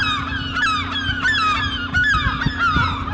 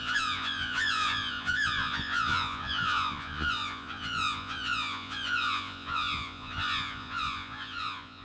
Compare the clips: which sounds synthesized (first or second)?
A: second